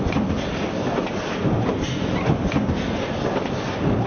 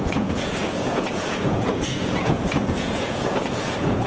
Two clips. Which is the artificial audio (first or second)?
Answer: second